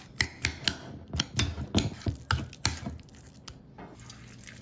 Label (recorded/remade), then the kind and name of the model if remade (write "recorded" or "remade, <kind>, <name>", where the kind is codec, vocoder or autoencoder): recorded